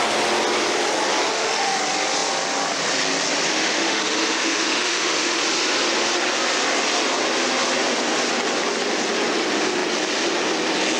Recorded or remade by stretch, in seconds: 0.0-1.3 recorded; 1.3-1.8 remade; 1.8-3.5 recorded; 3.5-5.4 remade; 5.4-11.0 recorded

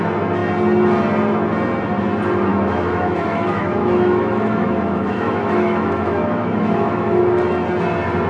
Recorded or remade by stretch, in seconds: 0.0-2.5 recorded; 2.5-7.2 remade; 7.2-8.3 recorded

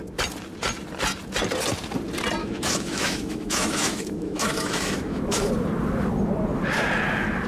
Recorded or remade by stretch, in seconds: 0.0-2.4 recorded; 2.4-5.5 remade; 5.5-7.5 recorded

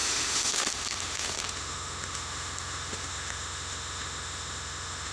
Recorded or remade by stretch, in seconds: 0.0-5.1 remade